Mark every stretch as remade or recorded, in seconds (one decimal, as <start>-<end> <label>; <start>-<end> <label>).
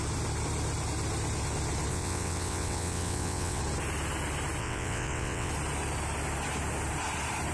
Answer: 0.0-1.9 recorded; 1.9-3.6 remade; 3.6-4.6 recorded; 4.6-5.5 remade; 5.5-7.5 recorded